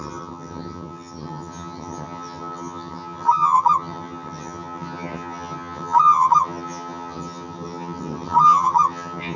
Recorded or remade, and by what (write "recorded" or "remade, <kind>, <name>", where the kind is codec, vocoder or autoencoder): remade, vocoder, HiFi-GAN